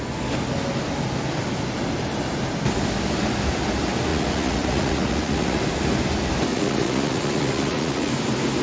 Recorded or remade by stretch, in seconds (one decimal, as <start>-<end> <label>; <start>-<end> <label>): 0.0-4.1 recorded; 4.1-5.6 remade; 5.6-6.5 recorded; 6.5-8.1 remade; 8.1-8.6 recorded